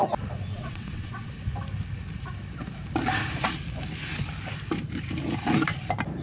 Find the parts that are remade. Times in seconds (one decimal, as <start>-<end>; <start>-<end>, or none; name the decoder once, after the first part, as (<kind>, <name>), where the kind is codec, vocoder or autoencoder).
0.5-1.3 (vocoder, WaveNeXt)